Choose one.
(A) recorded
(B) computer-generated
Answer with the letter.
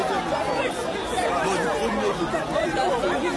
A